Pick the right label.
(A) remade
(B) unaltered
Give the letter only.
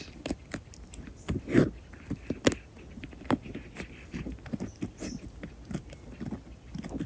B